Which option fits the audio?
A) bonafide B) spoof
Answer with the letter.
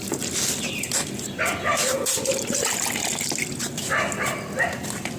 A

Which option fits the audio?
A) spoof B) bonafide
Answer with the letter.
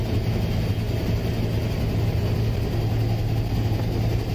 B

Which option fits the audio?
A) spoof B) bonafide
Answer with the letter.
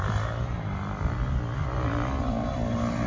B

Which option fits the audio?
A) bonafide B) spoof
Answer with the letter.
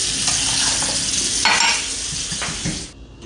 A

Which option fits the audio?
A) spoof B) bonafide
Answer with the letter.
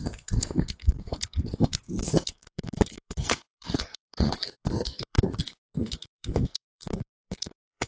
A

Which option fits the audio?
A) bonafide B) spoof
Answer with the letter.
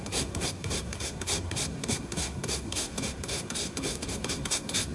B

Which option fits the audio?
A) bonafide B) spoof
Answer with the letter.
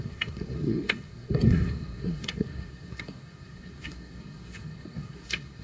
B